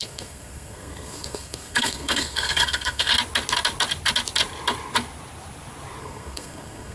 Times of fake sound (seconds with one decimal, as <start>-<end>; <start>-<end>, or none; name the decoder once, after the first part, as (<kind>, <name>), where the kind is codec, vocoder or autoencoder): 0.0-3.1 (codec, SNAC); 6.0-6.9